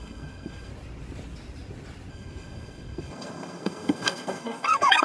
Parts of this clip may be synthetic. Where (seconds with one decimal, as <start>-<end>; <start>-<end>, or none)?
0.0-0.7; 2.1-5.0